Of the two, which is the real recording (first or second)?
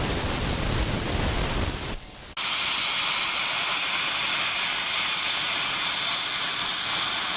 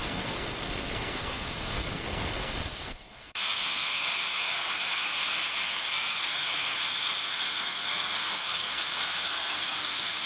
first